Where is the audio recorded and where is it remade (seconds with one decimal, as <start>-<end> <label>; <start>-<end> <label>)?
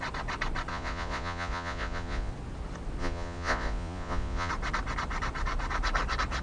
0.0-0.7 recorded; 0.7-2.3 remade; 2.3-3.0 recorded; 3.0-4.5 remade; 4.5-6.4 recorded